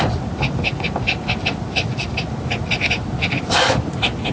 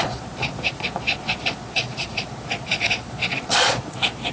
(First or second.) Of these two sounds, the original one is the first